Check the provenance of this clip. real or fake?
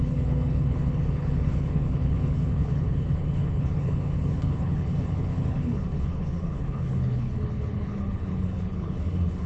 fake